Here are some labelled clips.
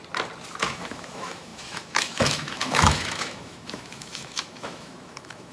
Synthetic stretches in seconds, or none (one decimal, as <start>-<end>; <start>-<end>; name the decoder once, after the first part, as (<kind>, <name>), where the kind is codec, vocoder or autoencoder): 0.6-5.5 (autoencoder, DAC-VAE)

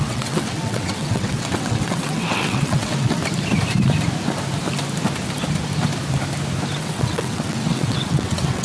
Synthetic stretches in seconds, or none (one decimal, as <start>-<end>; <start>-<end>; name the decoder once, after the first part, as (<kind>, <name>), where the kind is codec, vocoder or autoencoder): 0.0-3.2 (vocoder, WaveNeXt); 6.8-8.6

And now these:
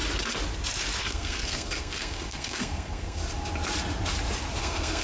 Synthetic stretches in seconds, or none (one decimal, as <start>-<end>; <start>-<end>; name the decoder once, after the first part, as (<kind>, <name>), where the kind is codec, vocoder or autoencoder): 1.0-3.2 (codec, SNAC); 4.6-5.0

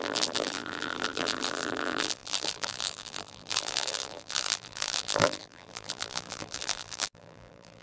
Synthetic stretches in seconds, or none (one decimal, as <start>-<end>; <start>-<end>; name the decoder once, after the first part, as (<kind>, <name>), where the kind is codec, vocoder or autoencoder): 0.0-7.8 (vocoder, BigVGAN v2)

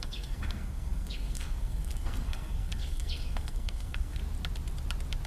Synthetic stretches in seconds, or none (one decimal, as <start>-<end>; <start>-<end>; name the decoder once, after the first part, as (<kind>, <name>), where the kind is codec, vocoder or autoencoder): 0.0-4.2 (codec, SNAC)

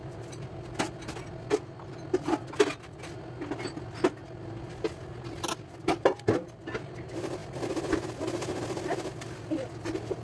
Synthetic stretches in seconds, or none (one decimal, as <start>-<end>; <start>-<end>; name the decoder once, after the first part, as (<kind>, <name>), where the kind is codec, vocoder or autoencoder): none

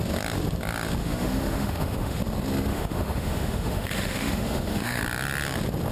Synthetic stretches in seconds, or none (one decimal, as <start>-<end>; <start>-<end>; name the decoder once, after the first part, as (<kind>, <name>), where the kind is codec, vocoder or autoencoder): 1.0-2.2 (autoencoder, DAC-VAE); 2.7-5.0